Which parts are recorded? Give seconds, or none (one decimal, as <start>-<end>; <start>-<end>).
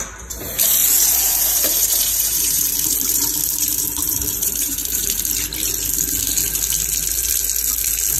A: 0.0-0.8; 5.3-8.2